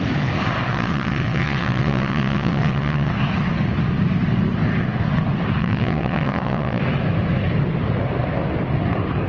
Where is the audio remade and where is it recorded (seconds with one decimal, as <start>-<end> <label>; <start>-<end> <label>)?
0.0-0.7 recorded; 0.7-3.1 remade; 3.1-5.6 recorded; 5.6-6.8 remade; 6.8-9.3 recorded

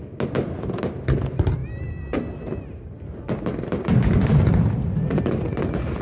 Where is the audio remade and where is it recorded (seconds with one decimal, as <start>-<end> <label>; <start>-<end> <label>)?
0.0-6.0 recorded

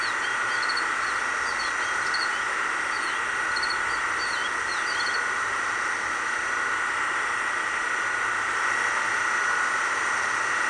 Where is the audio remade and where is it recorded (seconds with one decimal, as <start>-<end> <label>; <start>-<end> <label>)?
0.0-10.7 recorded

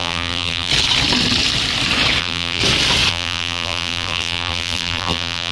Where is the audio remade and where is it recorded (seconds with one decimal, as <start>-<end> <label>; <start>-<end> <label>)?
0.0-0.7 remade; 0.7-2.2 recorded; 2.2-2.6 remade; 2.6-3.1 recorded; 3.1-5.5 remade

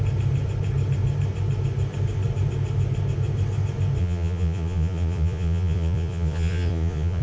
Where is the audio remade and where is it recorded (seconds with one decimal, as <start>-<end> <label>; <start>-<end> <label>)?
0.0-4.0 recorded; 4.0-7.2 remade

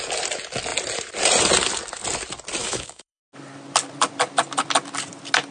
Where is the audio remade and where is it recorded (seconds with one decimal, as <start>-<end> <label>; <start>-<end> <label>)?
0.0-2.6 recorded; 2.6-3.2 remade; 3.2-5.5 recorded

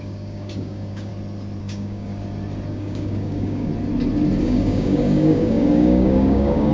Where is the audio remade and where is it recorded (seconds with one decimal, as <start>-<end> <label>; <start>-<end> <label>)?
0.0-1.1 remade; 1.1-1.6 recorded; 1.6-2.1 remade; 2.1-2.7 recorded; 2.7-3.7 remade; 3.7-4.4 recorded; 4.4-6.7 remade

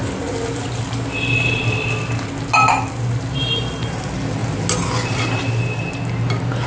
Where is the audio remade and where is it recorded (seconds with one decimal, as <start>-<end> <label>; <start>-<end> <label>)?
0.0-6.7 recorded